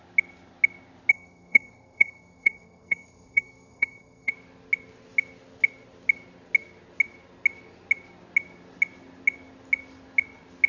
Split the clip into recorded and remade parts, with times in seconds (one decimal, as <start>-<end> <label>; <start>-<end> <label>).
0.0-1.1 recorded; 1.1-4.3 remade; 4.3-10.7 recorded